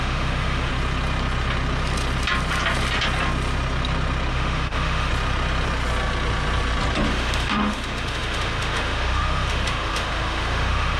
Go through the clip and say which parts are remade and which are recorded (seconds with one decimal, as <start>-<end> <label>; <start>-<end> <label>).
0.0-0.7 remade; 0.7-4.3 recorded; 4.3-5.1 remade; 5.1-7.1 recorded; 7.1-11.0 remade